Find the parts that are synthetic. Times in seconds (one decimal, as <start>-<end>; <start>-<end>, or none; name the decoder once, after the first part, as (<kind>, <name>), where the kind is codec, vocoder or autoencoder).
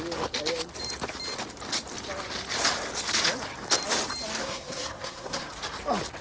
4.4-5.5 (codec, SNAC)